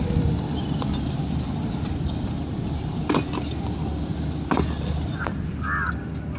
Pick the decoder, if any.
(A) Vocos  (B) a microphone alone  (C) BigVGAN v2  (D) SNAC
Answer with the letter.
C